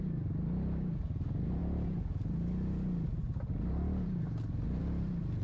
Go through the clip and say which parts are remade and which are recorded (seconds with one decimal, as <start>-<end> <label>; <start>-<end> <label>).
0.0-5.4 recorded